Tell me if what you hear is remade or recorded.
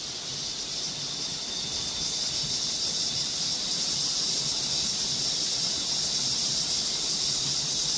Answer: recorded